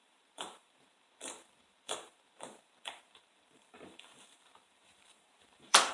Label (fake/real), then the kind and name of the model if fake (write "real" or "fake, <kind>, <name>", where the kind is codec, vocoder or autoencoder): fake, vocoder, BigVGAN v2